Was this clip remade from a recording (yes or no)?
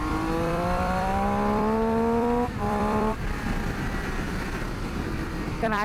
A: yes